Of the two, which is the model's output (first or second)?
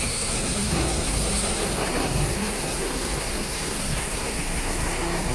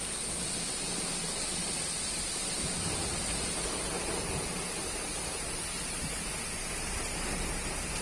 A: first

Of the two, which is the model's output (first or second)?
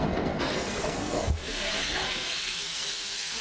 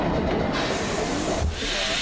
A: first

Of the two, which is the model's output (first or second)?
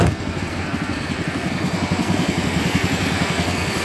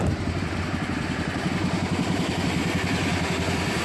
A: first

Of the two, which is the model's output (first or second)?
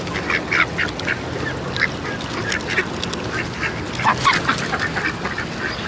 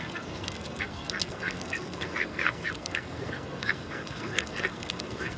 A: second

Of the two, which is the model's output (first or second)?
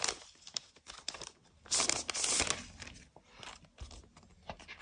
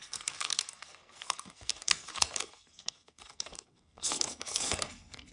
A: second